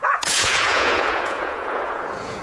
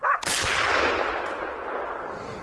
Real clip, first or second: second